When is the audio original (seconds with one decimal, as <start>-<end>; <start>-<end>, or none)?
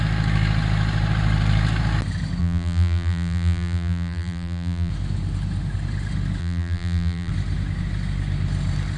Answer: 0.0-2.4; 4.9-6.4; 7.3-9.0